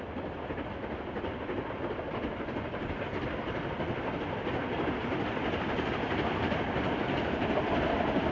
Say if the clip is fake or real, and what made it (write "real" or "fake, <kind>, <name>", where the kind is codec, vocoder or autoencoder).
fake, vocoder, BigVGAN v2